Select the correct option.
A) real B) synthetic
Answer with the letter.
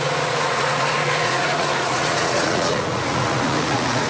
B